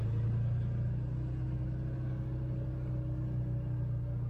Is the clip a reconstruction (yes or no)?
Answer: no